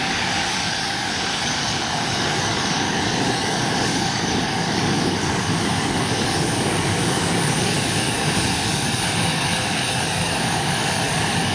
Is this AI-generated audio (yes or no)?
yes